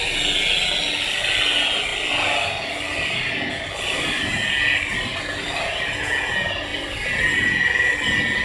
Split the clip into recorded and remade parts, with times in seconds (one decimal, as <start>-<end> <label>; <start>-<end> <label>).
0.0-8.4 recorded